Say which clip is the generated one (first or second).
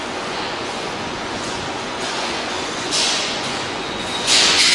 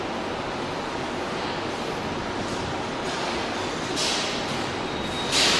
first